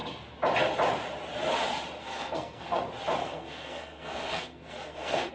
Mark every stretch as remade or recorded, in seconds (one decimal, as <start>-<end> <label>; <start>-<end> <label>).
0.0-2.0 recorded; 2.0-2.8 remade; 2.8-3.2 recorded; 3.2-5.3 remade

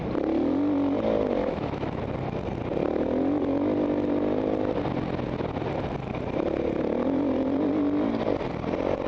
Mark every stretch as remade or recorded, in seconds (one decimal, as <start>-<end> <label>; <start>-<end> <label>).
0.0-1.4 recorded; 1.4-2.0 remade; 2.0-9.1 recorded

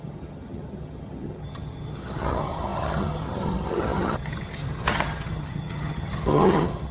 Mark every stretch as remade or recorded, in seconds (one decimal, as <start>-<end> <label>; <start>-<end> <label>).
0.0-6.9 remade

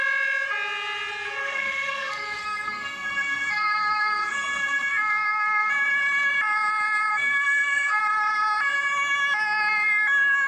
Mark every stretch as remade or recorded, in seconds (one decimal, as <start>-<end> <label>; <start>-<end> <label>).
0.0-1.4 recorded; 1.4-5.7 remade; 5.7-7.1 recorded; 7.1-8.0 remade; 8.0-10.5 recorded

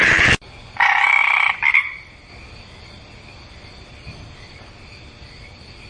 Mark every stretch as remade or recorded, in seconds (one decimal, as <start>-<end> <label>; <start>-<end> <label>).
0.0-0.6 recorded; 0.6-1.2 remade; 1.2-5.9 recorded

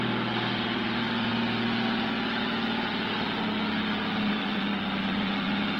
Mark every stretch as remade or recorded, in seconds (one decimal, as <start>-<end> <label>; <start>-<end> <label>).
0.0-1.3 remade; 1.3-4.3 recorded; 4.3-5.8 remade